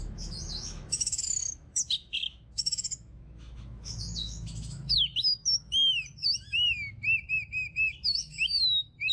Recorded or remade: remade